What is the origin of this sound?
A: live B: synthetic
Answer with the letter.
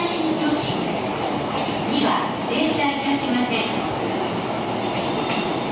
A